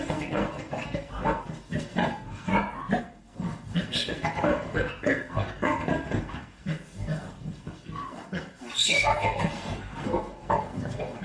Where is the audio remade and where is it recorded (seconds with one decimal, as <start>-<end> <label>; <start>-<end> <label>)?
0.0-2.5 remade; 2.5-3.0 recorded; 3.0-11.2 remade